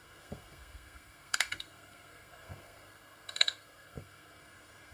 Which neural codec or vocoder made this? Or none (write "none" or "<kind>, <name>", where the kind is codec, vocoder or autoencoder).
codec, SNAC